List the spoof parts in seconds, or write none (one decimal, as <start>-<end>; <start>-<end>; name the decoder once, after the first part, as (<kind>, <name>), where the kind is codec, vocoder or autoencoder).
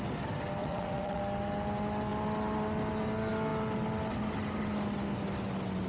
0.6-1.2 (vocoder, WaveNeXt)